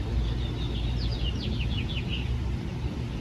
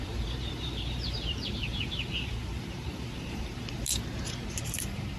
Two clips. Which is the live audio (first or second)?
first